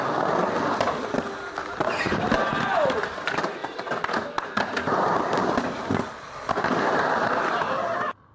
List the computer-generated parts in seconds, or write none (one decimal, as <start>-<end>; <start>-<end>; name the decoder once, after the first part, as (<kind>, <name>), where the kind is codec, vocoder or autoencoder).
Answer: 1.6-2.3 (vocoder, BigVGAN v2)